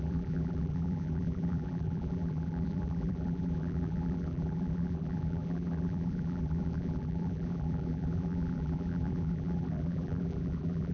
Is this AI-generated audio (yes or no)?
yes